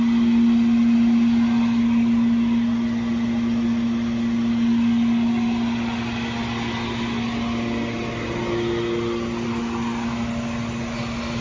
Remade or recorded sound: recorded